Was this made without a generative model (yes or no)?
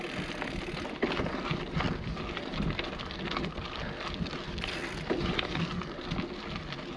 yes